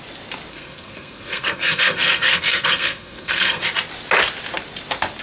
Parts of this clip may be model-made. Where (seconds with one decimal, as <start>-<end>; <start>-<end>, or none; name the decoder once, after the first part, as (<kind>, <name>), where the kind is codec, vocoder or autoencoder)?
0.5-3.6 (codec, SNAC)

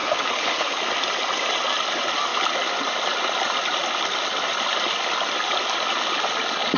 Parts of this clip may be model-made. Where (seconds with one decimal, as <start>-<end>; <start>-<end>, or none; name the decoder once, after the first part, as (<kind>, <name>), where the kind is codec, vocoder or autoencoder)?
0.0-0.8 (codec, HILCodec)

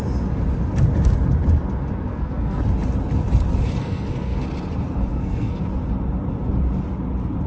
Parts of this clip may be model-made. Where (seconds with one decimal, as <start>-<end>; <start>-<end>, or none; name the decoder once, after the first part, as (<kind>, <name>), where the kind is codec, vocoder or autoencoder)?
2.1-2.6 (codec, SNAC); 3.8-4.4; 5.1-5.6